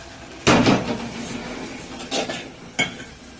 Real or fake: real